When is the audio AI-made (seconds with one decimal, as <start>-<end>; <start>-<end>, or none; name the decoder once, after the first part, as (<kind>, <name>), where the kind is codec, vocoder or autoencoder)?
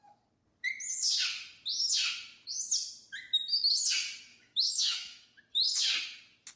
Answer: 4.3-5.4 (autoencoder, DAC-VAE)